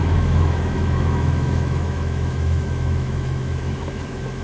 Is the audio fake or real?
fake